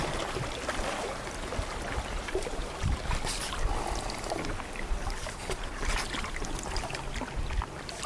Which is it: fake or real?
real